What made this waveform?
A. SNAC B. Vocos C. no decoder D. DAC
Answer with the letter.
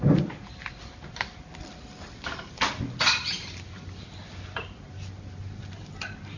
C